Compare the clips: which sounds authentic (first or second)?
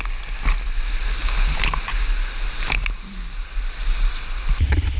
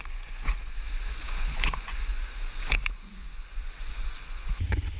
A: first